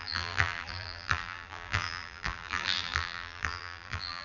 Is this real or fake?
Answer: fake